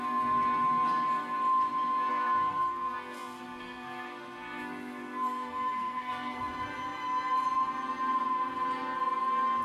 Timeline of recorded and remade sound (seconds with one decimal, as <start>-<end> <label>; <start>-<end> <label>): 0.0-2.1 recorded; 2.1-6.4 remade; 6.4-9.6 recorded